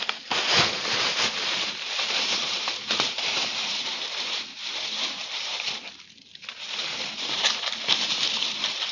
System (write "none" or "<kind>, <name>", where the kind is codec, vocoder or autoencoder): vocoder, BigVGAN v2